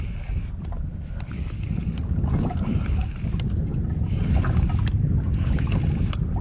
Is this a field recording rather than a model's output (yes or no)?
yes